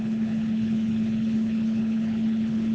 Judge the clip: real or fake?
fake